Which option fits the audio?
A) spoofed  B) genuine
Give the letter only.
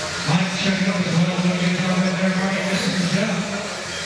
A